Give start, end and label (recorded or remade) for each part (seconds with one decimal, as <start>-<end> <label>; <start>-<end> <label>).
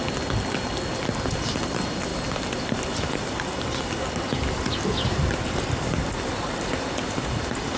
0.0-7.8 recorded